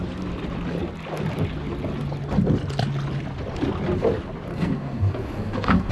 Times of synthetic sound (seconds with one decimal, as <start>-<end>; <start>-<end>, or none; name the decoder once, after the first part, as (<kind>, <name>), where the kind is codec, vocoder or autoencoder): 4.5-5.9 (codec, SNAC)